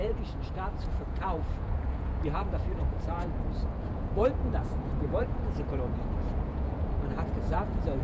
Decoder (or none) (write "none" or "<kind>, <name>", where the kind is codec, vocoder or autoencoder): vocoder, Vocos